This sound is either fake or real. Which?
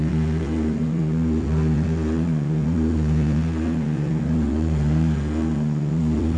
fake